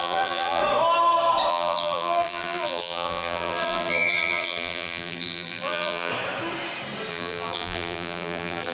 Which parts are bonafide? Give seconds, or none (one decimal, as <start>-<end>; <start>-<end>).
0.6-1.5; 6.1-7.1